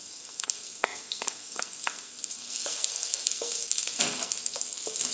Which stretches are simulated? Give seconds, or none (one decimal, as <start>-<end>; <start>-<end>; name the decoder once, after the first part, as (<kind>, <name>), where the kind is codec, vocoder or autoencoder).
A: 0.0-5.1 (codec, SNAC)